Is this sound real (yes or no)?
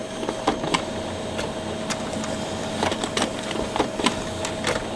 yes